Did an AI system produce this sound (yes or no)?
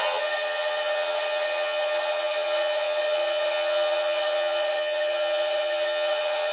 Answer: yes